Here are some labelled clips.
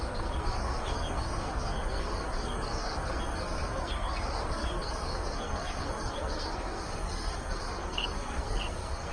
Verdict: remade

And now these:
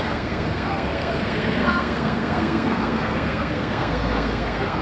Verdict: remade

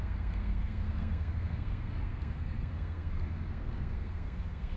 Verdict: remade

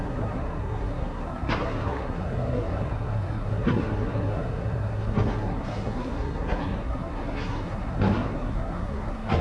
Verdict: remade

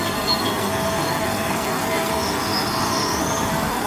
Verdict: remade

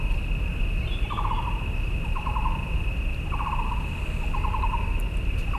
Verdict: recorded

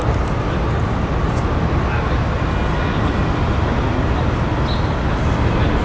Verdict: recorded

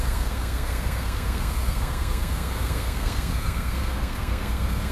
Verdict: remade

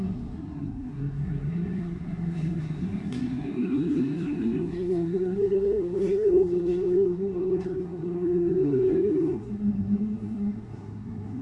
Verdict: remade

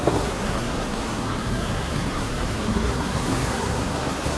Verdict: remade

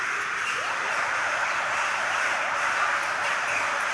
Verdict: recorded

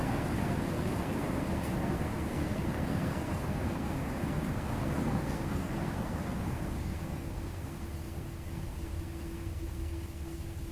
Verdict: remade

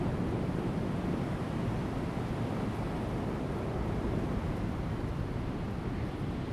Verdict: recorded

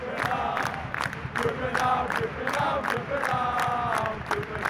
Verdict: recorded